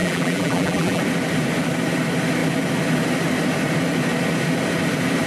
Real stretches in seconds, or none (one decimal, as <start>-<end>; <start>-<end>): 1.0-5.3